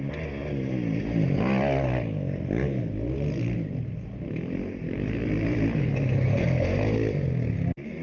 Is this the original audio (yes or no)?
yes